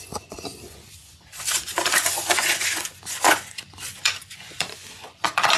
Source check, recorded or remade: remade